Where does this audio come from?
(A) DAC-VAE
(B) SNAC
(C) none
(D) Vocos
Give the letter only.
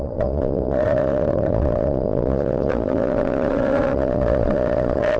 D